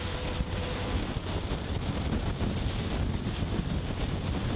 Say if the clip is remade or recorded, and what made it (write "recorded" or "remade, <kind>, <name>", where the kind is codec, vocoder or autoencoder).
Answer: recorded